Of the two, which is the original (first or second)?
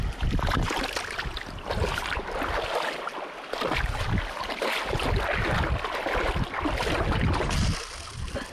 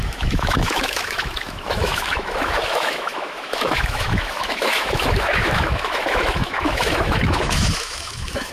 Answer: first